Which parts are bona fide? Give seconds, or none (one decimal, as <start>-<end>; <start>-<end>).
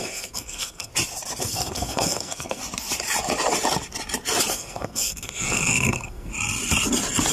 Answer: 0.9-1.4; 2.6-4.5; 6.3-7.3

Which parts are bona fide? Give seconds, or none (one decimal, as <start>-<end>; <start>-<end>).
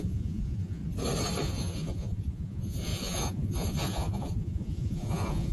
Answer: 0.8-1.4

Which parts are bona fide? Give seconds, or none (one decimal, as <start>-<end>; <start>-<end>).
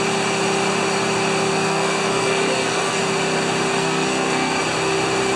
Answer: 0.0-1.5; 3.0-3.7; 4.6-5.4